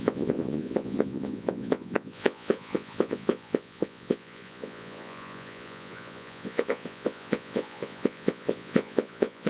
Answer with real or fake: fake